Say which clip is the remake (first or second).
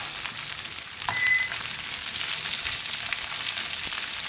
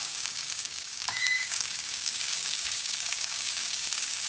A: second